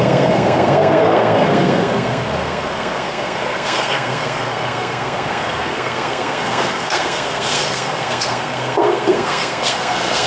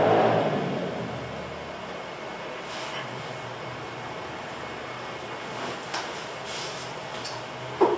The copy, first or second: first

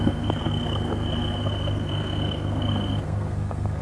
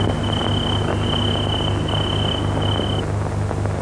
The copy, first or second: first